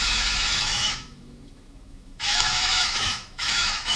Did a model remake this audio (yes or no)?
yes